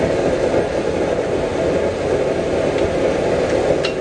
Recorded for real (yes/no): yes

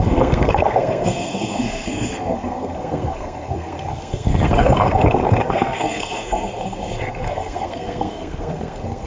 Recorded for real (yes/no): no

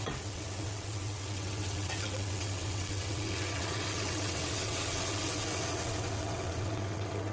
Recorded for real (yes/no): no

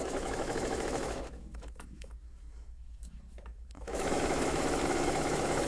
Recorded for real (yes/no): no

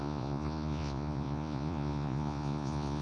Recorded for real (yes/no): no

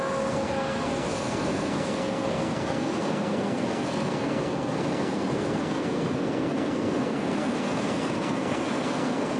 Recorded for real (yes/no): no